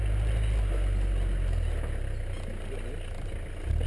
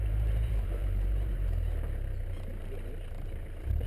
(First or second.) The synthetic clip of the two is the second